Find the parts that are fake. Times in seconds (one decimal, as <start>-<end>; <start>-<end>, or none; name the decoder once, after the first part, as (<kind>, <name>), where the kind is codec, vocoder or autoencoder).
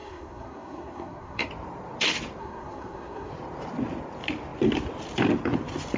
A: 0.0-1.5 (codec, SNAC); 2.4-3.3